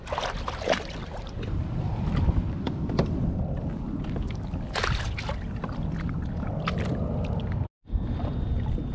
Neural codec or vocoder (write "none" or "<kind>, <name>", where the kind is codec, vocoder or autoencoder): none